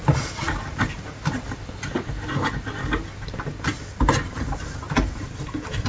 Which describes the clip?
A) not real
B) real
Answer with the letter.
B